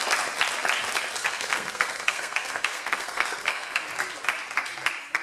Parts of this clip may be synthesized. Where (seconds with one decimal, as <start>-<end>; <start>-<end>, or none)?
1.2-3.8